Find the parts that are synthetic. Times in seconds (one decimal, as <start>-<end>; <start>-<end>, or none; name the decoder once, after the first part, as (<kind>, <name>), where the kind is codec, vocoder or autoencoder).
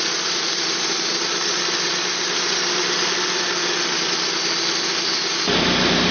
0.0-1.9 (vocoder, BigVGAN v2); 5.6-6.1